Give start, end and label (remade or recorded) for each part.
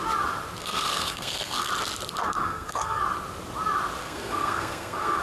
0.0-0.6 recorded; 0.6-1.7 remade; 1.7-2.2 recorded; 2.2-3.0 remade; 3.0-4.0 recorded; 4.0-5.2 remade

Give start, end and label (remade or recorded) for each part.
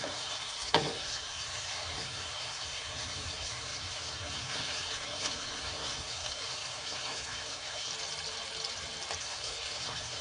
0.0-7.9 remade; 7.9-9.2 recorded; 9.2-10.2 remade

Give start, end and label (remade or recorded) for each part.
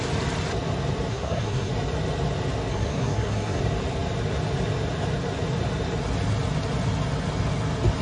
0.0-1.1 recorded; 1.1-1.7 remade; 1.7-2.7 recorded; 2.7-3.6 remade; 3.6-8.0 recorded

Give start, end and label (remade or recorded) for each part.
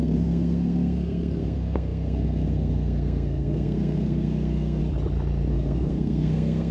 0.0-4.8 remade; 4.8-5.5 recorded; 5.5-6.7 remade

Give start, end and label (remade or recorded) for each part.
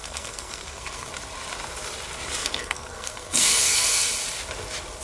0.0-1.1 remade; 1.1-2.4 recorded; 2.4-4.1 remade; 4.1-5.0 recorded